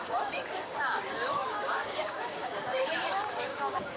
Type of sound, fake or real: fake